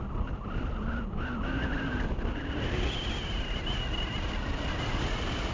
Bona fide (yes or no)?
yes